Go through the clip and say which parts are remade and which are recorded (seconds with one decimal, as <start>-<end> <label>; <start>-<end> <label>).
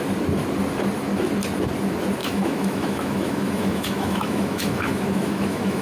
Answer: 0.0-2.2 recorded; 2.2-5.8 remade